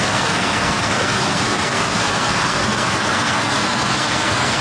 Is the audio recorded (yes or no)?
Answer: no